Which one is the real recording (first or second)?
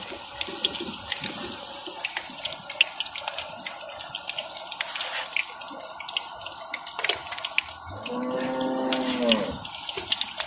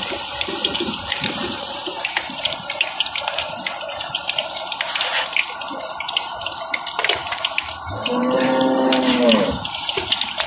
first